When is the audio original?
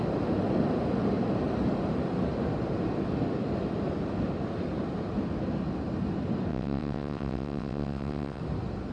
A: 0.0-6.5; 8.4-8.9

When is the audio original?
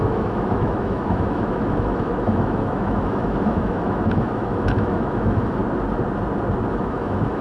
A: 5.6-6.7